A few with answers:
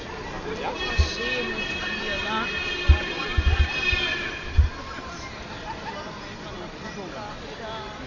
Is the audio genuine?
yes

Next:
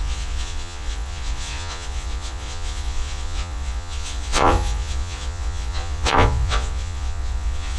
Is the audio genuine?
no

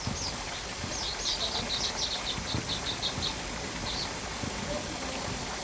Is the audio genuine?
yes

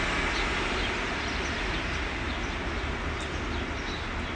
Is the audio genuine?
yes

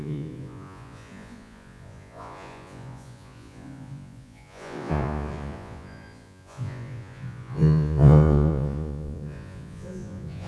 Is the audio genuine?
no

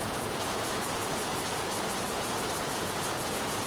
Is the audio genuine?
no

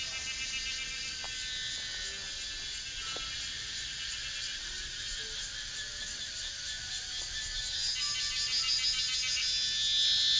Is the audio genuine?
yes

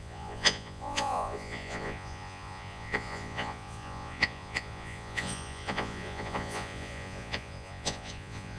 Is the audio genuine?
no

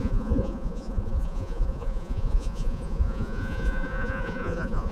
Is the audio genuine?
no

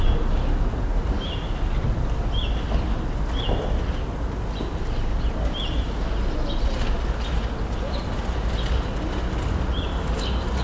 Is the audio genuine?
yes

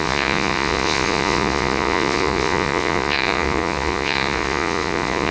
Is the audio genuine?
no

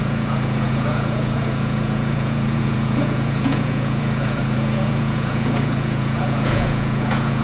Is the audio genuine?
no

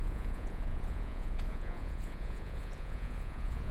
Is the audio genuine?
no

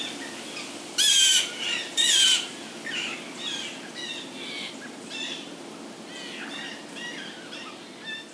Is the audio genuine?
yes